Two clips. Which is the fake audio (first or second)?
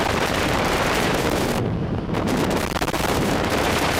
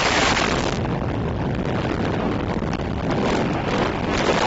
first